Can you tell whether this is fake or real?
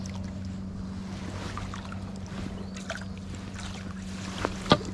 real